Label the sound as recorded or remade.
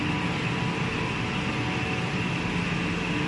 recorded